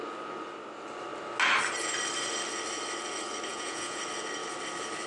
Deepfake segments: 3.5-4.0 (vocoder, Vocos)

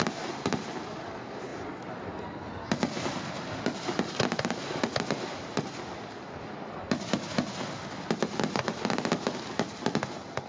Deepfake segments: none

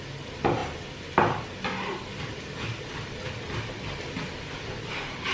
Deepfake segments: none

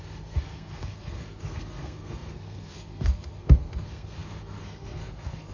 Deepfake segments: 0.0-5.5 (codec, SNAC)